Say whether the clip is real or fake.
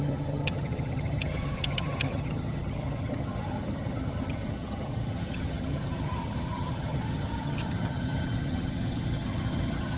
fake